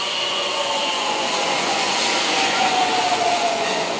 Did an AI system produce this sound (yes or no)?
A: yes